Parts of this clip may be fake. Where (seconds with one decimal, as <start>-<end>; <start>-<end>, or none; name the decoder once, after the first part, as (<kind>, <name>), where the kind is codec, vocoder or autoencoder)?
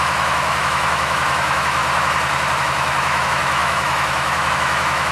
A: 0.0-1.8 (autoencoder, DAC-VAE); 2.6-5.1